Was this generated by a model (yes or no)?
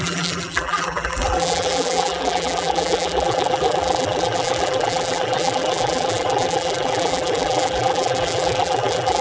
yes